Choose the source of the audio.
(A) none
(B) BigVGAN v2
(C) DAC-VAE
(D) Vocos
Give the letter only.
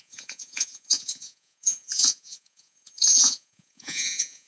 D